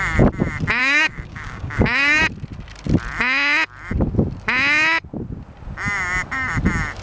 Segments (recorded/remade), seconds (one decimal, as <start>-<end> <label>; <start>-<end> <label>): 0.0-0.8 recorded; 0.8-2.2 remade; 2.2-7.0 recorded